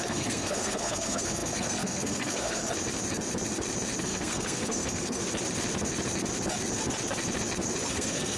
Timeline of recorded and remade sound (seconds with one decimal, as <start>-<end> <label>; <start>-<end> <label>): 0.0-2.6 remade; 2.6-4.0 recorded; 4.0-5.2 remade; 5.2-7.9 recorded; 7.9-8.4 remade